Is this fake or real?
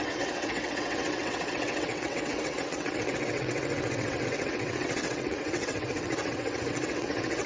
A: fake